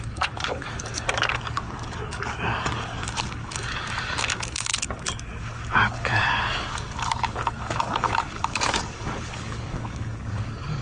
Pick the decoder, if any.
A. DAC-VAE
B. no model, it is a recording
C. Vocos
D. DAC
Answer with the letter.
D